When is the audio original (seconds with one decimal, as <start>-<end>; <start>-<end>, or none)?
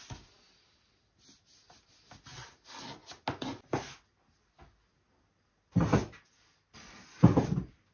0.0-7.9